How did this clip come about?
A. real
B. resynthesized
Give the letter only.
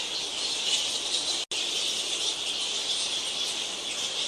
A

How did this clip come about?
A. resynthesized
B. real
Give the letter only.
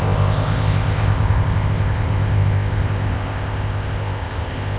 A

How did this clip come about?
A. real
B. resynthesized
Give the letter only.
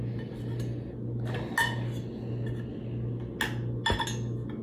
A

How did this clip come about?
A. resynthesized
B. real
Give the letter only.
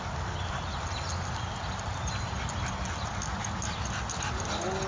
B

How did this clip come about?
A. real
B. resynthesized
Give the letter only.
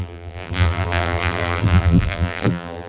B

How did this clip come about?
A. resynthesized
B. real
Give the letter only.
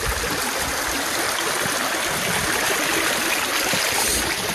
B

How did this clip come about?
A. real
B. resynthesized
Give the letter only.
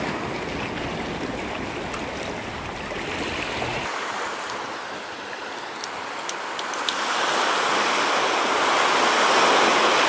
A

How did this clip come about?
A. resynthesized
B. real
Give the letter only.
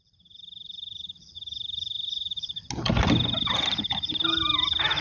B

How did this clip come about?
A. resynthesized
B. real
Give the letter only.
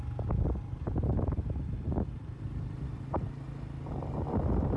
B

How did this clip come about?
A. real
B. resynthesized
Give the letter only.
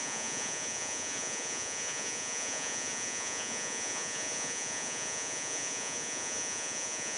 B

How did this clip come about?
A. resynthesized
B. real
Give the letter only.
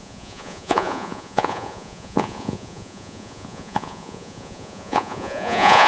A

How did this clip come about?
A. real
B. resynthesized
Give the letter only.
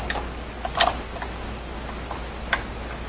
A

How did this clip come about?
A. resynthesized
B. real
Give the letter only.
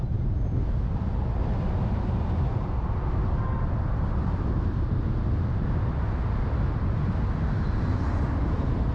B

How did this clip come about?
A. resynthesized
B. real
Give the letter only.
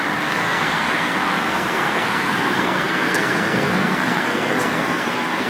A